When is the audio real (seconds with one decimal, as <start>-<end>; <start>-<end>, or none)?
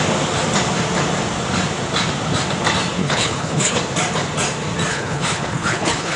0.0-3.0; 3.8-4.9